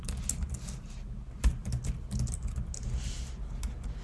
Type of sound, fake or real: real